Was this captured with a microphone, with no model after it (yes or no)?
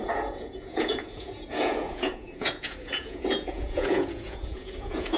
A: no